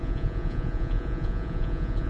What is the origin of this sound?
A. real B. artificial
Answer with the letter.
B